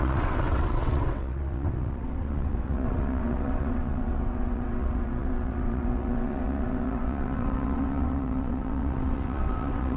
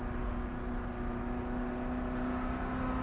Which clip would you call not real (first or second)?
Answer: first